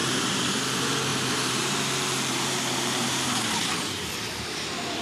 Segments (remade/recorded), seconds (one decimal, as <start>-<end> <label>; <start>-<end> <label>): 0.0-0.5 remade; 0.5-1.1 recorded; 1.1-4.1 remade; 4.1-5.0 recorded